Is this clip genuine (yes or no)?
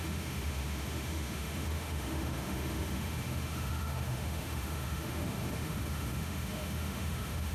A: no